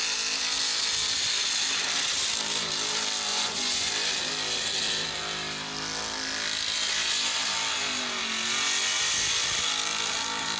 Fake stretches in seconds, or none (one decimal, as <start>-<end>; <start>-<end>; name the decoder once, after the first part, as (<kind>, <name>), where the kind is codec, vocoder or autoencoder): 3.3-3.9 (vocoder, Vocos)